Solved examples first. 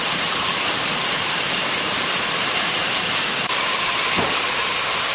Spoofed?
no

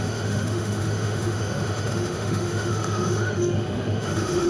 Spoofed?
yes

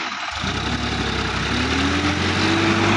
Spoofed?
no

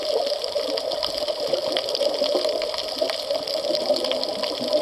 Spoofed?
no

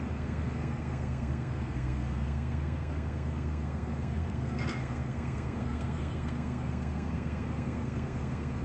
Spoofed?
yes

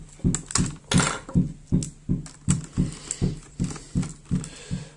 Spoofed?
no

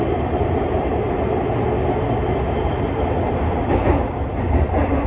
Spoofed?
no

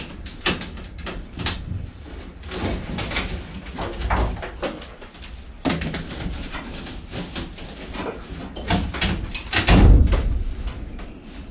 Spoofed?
no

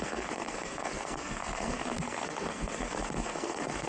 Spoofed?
yes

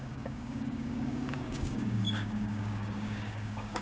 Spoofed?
yes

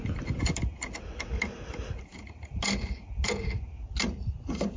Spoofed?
no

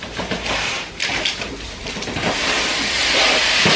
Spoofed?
no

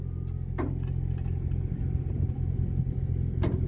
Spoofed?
no